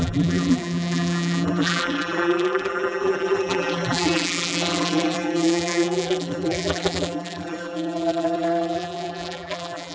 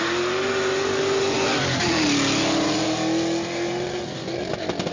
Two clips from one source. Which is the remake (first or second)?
first